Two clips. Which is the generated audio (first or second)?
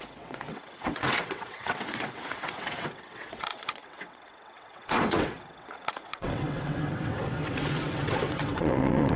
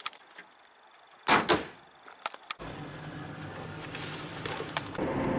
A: first